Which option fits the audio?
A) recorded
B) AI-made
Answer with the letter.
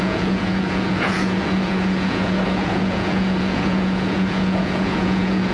B